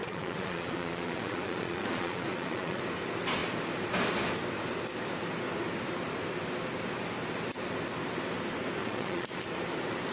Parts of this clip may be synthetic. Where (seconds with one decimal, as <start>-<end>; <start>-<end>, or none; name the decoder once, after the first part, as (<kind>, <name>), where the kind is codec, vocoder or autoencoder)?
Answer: 0.0-2.8 (vocoder, Vocos); 8.8-9.4